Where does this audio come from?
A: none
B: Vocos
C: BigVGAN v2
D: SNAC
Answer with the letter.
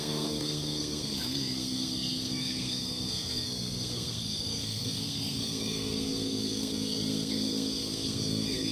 D